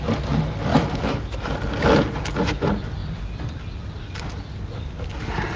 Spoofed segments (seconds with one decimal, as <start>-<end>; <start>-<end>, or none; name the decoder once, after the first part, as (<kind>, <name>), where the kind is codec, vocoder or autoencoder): 0.7-1.4 (autoencoder, DAC-VAE)